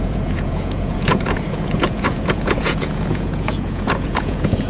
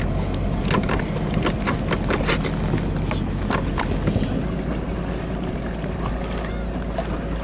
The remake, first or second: first